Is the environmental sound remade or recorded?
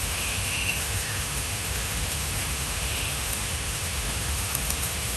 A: remade